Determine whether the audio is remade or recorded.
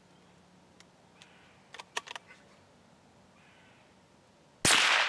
recorded